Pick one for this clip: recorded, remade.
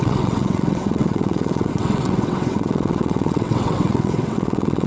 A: remade